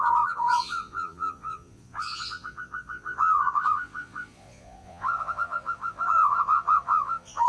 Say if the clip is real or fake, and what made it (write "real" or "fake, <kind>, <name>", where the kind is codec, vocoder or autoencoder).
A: fake, vocoder, Vocos